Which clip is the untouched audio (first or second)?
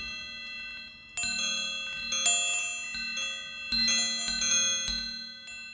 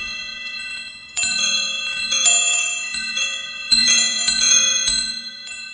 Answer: first